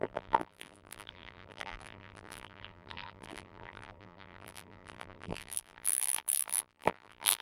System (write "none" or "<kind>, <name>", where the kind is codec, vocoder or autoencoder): vocoder, BigVGAN v2